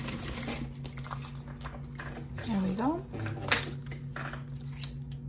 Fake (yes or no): no